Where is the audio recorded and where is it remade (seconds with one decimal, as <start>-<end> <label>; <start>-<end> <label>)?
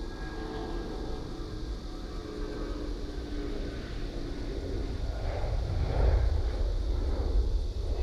0.0-8.0 recorded